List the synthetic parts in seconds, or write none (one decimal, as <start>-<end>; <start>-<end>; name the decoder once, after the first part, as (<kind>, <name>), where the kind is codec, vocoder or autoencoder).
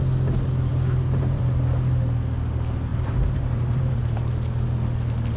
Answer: 0.7-1.4 (vocoder, BigVGAN v2); 2.9-4.3